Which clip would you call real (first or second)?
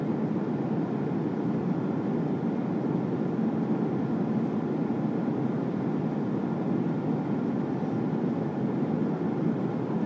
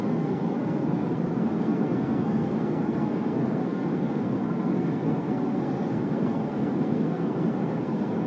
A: first